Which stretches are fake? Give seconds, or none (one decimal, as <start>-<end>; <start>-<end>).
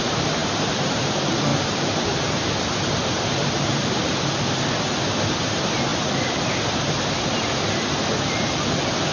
0.4-1.0; 1.5-4.2